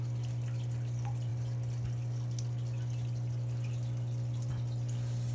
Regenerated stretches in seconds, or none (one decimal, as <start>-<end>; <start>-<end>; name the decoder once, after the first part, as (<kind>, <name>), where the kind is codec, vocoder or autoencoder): none